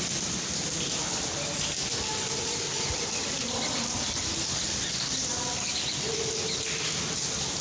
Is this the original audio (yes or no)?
yes